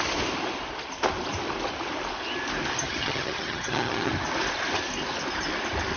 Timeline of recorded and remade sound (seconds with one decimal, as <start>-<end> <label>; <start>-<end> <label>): 0.0-2.8 recorded; 2.8-4.1 remade; 4.1-6.0 recorded